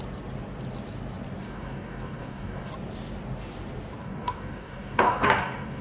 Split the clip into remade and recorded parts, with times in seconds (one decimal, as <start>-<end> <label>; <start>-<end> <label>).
0.0-1.4 recorded; 1.4-2.7 remade; 2.7-4.0 recorded; 4.0-5.8 remade